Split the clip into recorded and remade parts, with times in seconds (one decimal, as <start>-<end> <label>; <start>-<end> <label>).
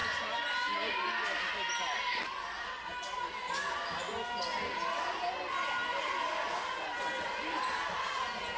0.0-8.6 recorded